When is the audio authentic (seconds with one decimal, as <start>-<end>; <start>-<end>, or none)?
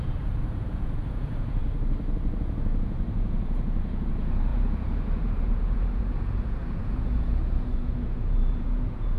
1.6-2.4